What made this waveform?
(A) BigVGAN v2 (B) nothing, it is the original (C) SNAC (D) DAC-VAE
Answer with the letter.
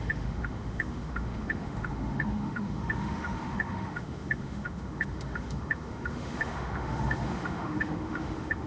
D